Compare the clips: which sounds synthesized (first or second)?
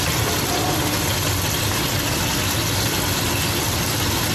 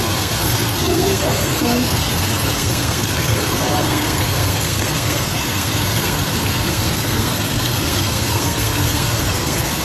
second